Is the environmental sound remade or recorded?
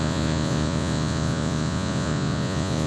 remade